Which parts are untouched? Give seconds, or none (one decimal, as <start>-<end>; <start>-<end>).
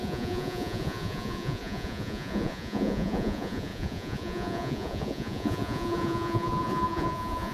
none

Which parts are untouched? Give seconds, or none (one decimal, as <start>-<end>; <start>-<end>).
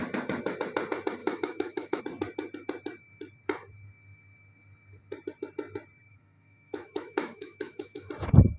0.0-1.2; 2.0-6.1; 8.1-8.6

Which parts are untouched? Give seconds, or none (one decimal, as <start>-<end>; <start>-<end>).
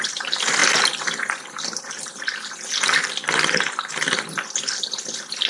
0.0-0.6; 3.9-5.5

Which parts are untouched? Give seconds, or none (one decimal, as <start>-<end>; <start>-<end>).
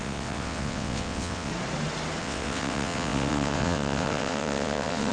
1.5-2.2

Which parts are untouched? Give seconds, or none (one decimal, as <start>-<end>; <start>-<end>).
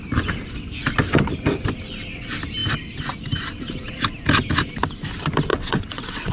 0.0-5.5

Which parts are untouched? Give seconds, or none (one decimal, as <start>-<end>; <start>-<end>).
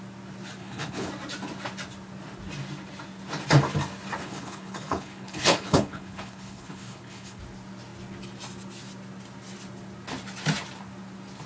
0.0-0.6; 1.1-4.2; 7.4-11.5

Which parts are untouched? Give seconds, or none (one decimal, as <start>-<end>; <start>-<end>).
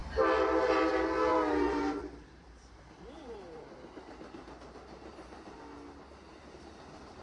0.0-1.3; 5.6-7.2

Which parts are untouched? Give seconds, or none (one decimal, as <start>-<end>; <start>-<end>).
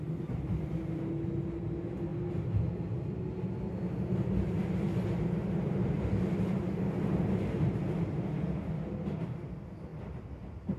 0.0-10.8